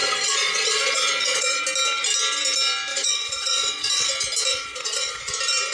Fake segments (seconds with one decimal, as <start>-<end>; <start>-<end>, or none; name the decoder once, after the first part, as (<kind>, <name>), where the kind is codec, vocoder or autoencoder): 0.0-1.6 (vocoder, Vocos); 2.9-4.1; 4.5-5.3